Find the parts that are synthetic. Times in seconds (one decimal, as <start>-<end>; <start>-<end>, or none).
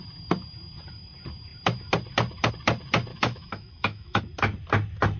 3.1-4.2